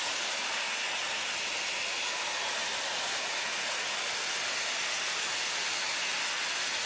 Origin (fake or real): real